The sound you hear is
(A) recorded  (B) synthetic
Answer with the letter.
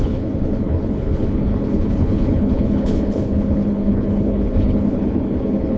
B